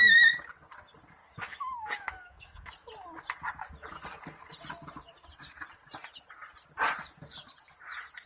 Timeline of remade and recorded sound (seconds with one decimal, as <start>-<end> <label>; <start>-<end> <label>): 0.0-1.2 recorded; 1.2-2.7 remade; 2.7-8.3 recorded